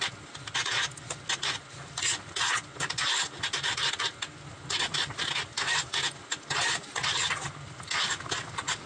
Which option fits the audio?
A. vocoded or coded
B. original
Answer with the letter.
B